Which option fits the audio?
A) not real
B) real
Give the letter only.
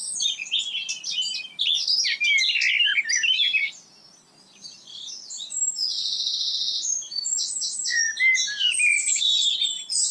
B